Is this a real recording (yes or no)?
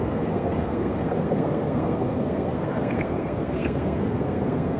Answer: no